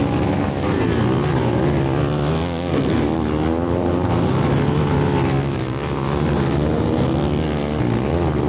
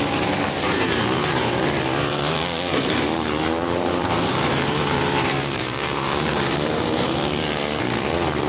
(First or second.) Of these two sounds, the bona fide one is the first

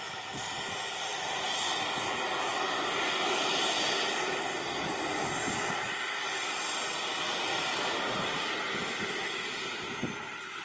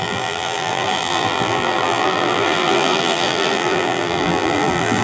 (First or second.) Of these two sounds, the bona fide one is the first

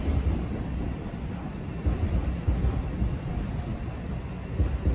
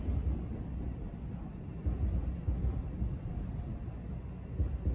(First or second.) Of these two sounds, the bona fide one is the second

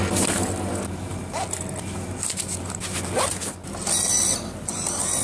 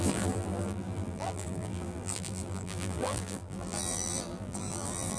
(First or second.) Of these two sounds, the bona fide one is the first